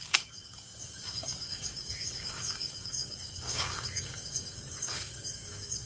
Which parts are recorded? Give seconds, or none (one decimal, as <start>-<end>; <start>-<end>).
none